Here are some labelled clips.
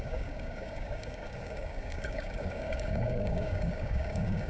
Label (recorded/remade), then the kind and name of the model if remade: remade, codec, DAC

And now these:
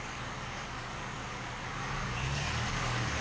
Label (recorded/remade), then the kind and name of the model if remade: remade, codec, DAC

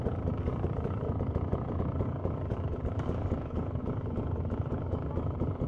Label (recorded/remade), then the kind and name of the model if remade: remade, codec, DAC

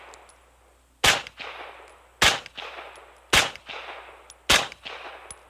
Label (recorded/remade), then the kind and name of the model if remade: recorded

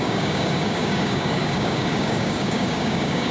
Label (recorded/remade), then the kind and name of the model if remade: remade, codec, DAC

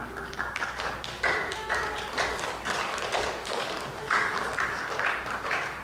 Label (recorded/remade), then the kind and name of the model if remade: remade, codec, DAC